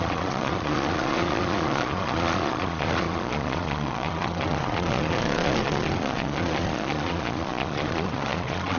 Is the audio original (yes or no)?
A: no